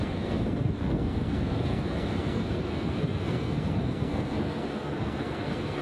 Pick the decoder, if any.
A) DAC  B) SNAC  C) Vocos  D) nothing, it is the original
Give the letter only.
B